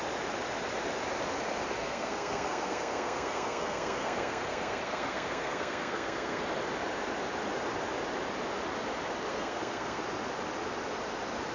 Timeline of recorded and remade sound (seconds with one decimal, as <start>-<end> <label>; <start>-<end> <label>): 0.0-1.8 recorded; 1.8-6.4 remade; 6.4-9.3 recorded; 9.3-10.0 remade; 10.0-11.5 recorded